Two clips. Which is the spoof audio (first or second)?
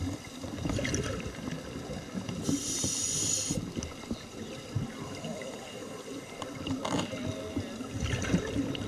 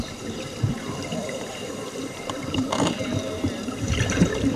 second